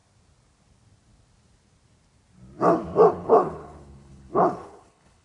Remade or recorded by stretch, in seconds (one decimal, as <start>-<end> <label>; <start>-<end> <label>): 0.0-3.1 recorded; 3.1-5.2 remade